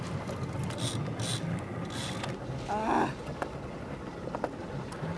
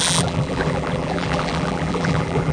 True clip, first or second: first